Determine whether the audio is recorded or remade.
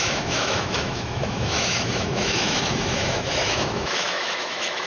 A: remade